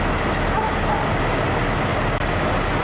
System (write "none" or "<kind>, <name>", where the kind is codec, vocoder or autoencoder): none